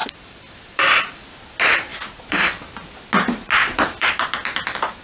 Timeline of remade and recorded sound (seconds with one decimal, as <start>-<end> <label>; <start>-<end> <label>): 0.0-1.3 remade; 1.3-3.7 recorded; 3.7-4.3 remade; 4.3-5.0 recorded